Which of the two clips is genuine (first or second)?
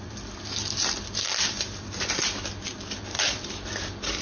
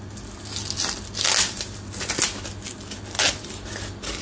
second